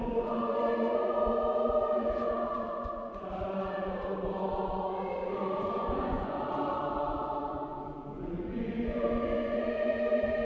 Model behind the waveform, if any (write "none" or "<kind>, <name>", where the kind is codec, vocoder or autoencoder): vocoder, Vocos